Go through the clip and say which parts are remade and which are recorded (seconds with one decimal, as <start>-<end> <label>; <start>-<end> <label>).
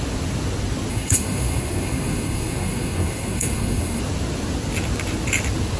0.0-0.9 recorded; 0.9-4.0 remade; 4.0-5.8 recorded